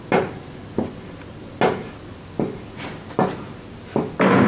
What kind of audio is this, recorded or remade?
recorded